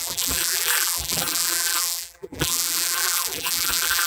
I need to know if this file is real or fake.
fake